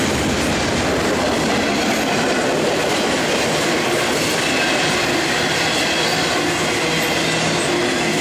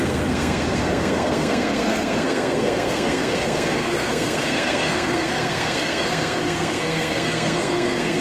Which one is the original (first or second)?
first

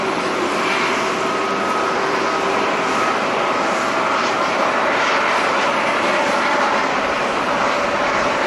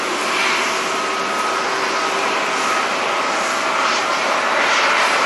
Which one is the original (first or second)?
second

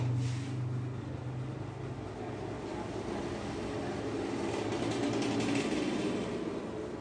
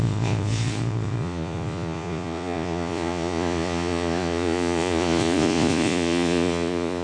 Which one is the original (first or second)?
first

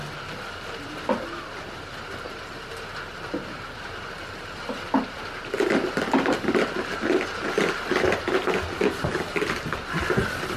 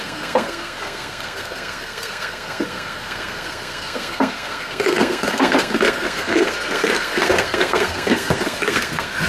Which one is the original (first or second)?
first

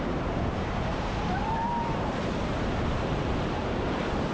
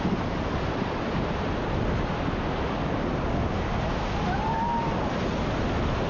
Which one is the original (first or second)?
second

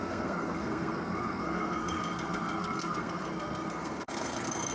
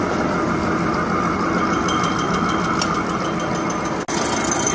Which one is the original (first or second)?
second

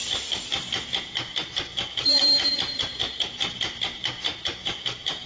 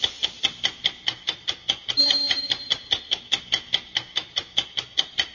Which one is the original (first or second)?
second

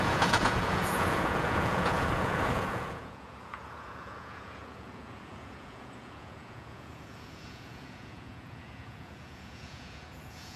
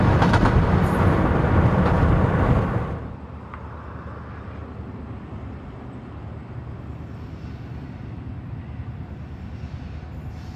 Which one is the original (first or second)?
second